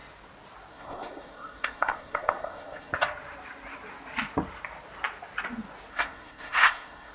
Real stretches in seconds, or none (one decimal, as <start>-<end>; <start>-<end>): 0.0-0.7; 2.9-5.9